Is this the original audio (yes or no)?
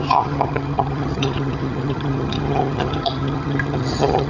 no